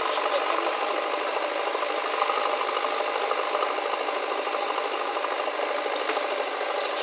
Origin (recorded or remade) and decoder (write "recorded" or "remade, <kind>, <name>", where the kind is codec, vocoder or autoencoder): recorded